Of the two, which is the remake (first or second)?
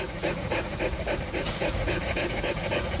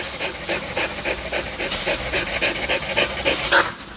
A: first